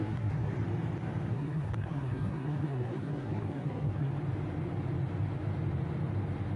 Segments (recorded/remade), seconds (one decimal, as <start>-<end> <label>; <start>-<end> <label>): 0.0-0.5 remade; 0.5-1.3 recorded; 1.3-4.1 remade; 4.1-6.6 recorded